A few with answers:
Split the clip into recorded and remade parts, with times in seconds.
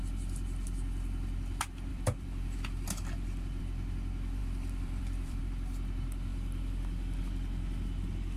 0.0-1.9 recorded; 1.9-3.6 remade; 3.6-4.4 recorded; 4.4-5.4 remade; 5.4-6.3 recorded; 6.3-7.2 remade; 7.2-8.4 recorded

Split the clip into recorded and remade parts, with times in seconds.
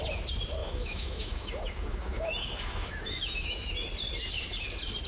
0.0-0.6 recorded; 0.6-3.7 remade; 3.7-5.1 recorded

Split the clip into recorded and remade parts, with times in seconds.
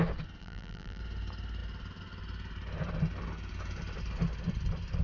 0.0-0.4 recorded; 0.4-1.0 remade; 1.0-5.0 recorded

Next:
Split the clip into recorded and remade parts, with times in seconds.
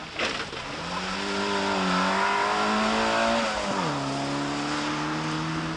0.0-5.8 recorded